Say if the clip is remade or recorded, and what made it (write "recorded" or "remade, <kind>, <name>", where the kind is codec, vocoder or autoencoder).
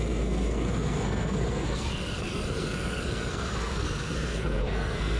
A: remade, codec, SNAC